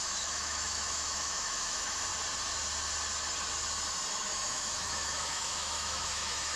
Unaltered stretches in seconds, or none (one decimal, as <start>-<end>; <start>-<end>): 2.1-4.1